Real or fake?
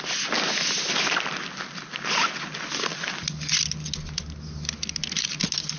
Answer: real